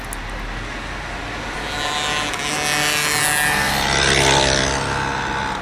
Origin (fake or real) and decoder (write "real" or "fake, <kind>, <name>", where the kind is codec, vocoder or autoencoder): real